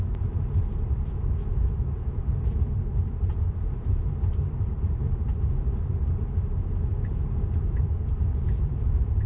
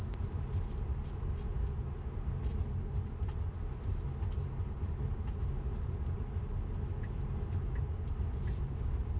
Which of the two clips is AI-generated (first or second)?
first